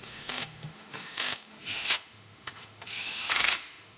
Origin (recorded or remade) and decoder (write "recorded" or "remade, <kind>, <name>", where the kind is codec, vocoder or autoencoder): remade, autoencoder, DAC-VAE